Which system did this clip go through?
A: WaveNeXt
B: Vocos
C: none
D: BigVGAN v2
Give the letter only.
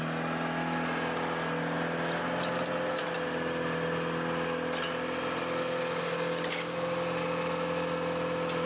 C